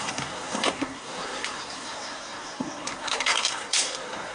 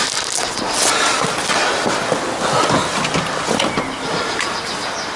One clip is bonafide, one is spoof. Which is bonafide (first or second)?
second